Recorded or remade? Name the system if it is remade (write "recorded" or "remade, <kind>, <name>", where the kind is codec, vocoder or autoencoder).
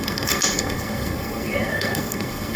remade, codec, SNAC